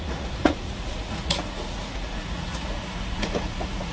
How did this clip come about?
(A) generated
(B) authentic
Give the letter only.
A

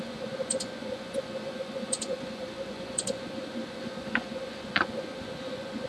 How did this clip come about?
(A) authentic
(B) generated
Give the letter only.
B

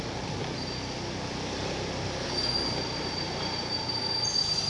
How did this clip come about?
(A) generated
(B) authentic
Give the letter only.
B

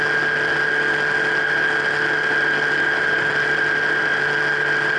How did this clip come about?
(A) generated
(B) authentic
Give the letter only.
B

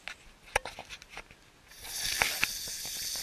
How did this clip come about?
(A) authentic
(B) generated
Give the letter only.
A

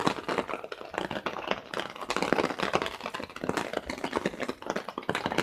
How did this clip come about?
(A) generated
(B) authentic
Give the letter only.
B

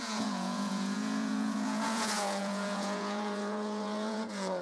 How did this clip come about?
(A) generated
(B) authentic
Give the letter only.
A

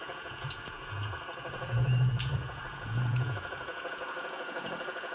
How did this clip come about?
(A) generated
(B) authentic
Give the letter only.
A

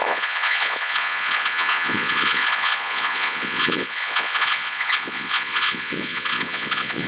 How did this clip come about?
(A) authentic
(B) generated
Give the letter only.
B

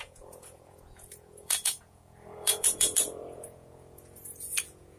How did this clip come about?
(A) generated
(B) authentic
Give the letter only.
A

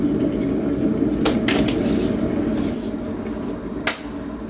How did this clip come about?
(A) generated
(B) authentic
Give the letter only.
B